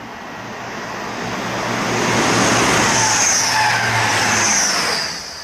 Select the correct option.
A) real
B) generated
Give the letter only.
A